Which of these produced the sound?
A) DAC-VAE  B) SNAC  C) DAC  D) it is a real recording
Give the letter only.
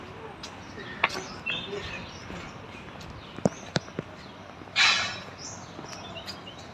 D